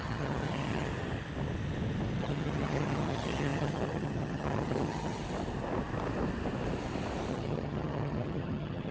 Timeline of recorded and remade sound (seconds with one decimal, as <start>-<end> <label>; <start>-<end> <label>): 0.0-0.9 remade; 0.9-2.2 recorded; 2.2-5.2 remade; 5.2-7.3 recorded; 7.3-8.9 remade